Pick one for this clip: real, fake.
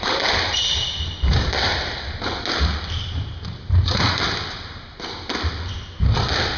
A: real